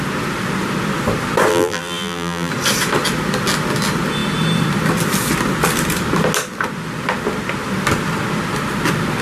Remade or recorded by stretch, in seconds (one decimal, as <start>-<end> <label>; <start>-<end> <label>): 0.0-1.5 recorded; 1.5-2.5 remade; 2.5-9.2 recorded